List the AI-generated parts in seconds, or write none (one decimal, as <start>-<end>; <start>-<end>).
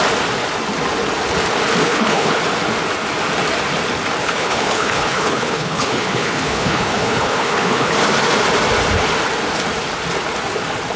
1.8-2.4; 4.2-7.9